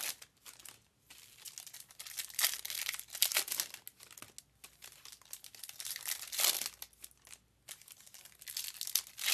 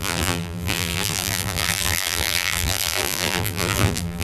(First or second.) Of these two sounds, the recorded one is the first